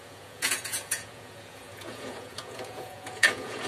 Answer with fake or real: fake